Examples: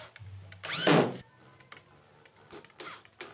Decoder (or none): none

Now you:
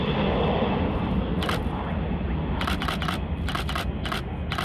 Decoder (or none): none